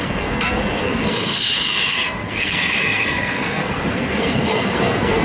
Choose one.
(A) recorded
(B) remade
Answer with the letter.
B